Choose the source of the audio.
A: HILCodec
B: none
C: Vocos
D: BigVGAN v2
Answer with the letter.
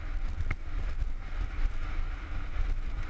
B